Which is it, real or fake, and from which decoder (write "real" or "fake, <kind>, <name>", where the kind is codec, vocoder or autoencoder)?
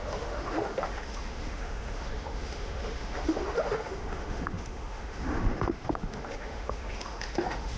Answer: fake, autoencoder, DAC-VAE